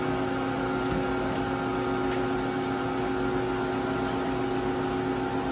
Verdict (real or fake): real